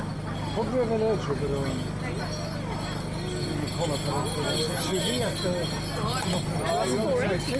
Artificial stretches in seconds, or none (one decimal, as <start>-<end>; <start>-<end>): none